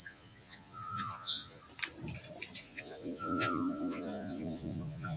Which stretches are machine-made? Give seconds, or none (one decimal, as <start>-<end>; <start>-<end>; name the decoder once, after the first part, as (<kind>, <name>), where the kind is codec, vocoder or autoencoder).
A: 0.0-1.6 (vocoder, Vocos); 2.6-5.2